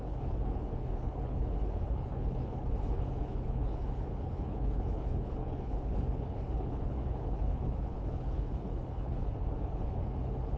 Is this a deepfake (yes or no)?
yes